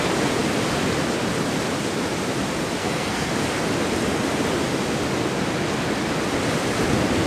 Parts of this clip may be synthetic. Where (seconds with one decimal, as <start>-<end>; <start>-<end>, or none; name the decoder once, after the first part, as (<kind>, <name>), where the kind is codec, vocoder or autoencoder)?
2.8-3.3 (codec, SNAC)